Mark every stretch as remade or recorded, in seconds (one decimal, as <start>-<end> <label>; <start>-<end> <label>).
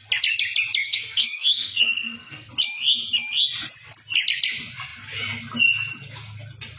0.0-0.8 recorded; 0.8-2.5 remade; 2.5-6.8 recorded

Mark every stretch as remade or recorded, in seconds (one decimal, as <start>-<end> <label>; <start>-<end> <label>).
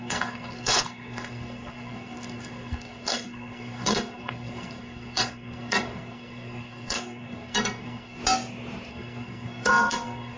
0.0-8.2 remade; 8.2-8.9 recorded; 8.9-10.4 remade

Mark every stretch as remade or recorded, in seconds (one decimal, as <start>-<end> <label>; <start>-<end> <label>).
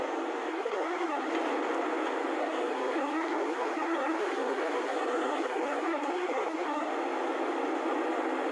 0.0-0.5 recorded; 0.5-1.3 remade; 1.3-2.4 recorded; 2.4-6.9 remade; 6.9-8.5 recorded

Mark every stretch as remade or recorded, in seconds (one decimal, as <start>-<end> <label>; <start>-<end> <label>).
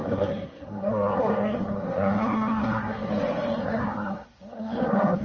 0.0-3.1 remade; 3.1-3.6 recorded; 3.6-5.2 remade